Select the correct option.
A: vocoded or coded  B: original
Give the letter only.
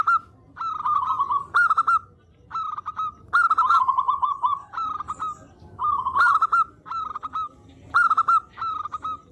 B